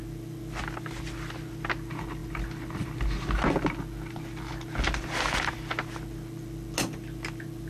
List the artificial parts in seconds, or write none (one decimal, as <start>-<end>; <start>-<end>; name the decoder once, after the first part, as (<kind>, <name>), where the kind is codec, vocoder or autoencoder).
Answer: none